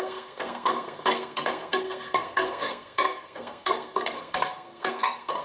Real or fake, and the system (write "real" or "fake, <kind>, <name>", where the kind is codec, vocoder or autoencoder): fake, codec, SNAC